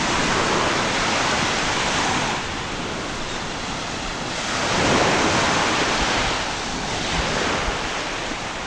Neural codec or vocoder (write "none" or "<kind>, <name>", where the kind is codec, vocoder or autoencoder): none